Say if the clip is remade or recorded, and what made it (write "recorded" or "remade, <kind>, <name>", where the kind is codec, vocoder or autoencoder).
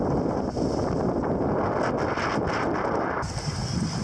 remade, vocoder, BigVGAN v2